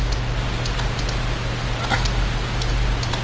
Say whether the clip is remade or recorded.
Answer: recorded